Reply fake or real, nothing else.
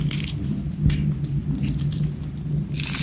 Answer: real